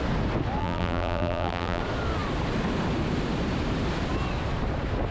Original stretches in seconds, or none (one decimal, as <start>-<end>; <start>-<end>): 0.0-0.6; 1.8-5.1